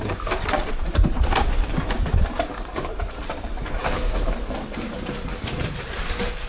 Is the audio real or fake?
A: fake